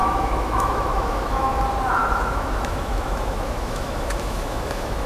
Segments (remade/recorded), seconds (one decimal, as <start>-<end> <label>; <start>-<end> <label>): 0.0-1.6 remade; 1.6-2.0 recorded; 2.0-5.1 remade